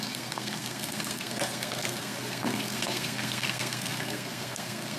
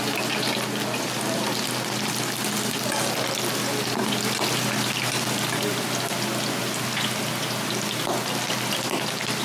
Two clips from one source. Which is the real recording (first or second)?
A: second